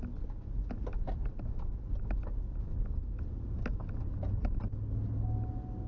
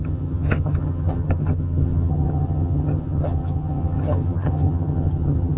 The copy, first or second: second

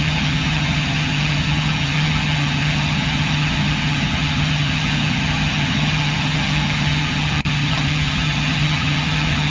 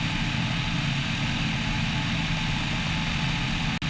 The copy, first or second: first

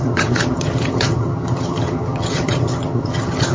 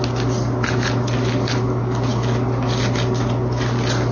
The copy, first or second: first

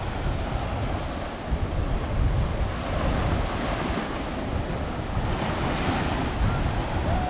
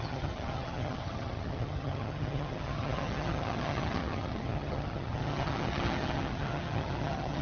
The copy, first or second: second